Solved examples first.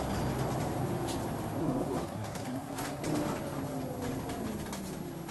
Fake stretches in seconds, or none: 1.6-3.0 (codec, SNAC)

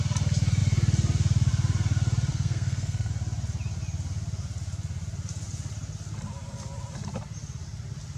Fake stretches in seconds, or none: 2.3-3.1 (codec, SNAC)

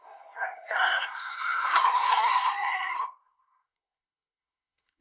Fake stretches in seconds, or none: 0.0-5.0 (codec, SNAC)

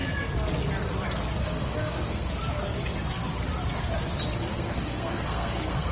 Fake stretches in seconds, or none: 1.4-2.3 (codec, SNAC); 4.5-5.9

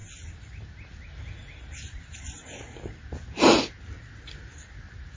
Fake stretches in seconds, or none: none